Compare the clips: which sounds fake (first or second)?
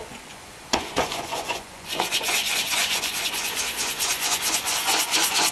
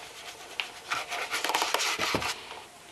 first